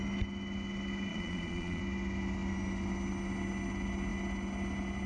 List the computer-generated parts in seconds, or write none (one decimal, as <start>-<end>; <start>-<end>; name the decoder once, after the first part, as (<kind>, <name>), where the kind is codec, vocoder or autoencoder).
1.1-1.8 (vocoder, Vocos)